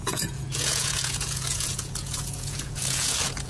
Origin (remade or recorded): remade